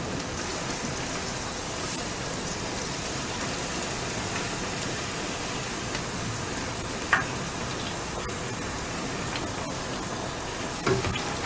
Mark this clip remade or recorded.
recorded